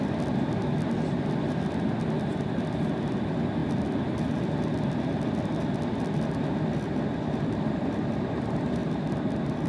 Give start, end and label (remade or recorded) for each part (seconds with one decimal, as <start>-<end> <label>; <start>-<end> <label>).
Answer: 0.0-9.7 recorded